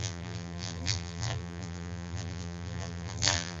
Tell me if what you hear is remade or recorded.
remade